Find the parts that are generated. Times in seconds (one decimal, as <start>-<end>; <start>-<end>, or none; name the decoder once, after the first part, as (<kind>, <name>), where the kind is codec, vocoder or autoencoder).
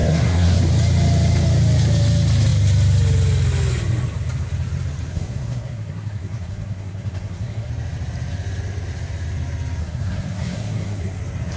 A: 0.0-0.6 (codec, SNAC); 5.1-7.7; 9.8-11.2